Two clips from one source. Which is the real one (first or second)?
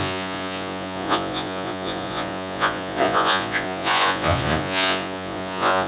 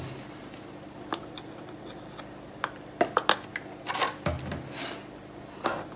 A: second